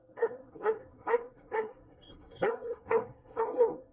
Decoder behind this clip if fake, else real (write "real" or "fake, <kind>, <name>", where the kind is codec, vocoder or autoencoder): fake, codec, SNAC